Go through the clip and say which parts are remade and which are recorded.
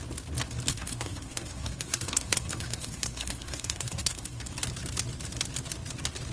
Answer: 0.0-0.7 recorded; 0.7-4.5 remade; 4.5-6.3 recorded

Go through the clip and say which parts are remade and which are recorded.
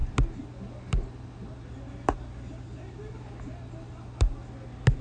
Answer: 0.0-5.0 recorded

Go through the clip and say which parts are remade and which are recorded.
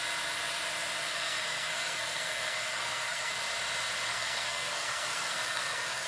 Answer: 0.0-1.1 recorded; 1.1-3.3 remade; 3.3-4.1 recorded; 4.1-6.1 remade